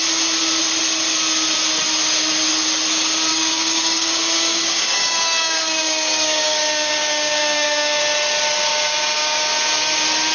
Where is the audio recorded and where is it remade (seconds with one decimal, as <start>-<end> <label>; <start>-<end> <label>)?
0.0-3.3 recorded; 3.3-8.0 remade; 8.0-8.7 recorded; 8.7-9.5 remade; 9.5-10.3 recorded